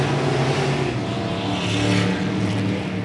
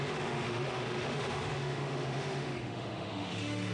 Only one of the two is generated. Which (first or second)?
second